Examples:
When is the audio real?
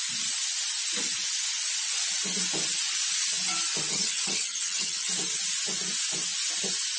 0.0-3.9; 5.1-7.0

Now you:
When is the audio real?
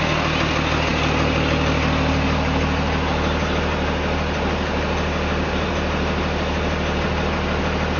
0.0-8.0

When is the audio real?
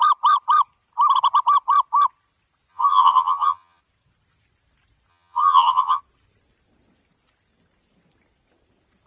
0.0-2.7; 3.8-5.1; 6.0-9.1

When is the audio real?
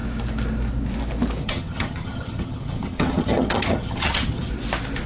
0.0-1.4; 4.5-5.1